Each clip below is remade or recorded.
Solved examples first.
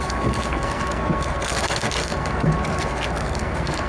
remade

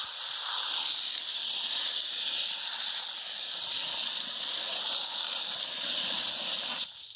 recorded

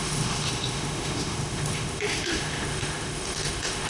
remade